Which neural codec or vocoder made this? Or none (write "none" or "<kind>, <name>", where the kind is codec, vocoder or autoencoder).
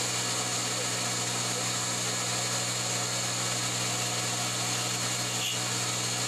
none